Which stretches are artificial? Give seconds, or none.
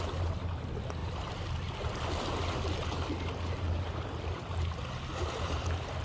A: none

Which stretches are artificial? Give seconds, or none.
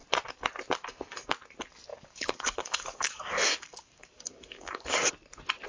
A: 1.9-5.1 (codec, DAC)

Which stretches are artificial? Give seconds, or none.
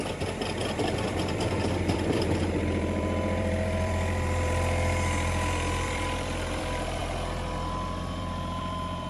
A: 0.0-7.0 (vocoder, BigVGAN v2); 8.2-9.1